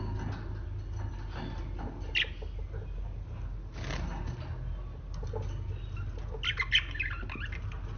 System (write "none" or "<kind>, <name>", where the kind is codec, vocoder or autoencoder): none